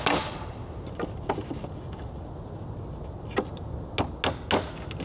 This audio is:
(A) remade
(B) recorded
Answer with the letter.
B